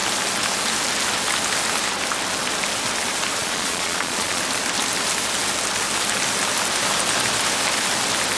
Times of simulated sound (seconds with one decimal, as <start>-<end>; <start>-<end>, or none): 3.4-4.4